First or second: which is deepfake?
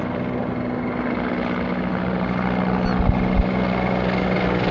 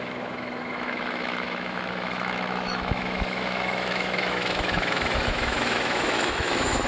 second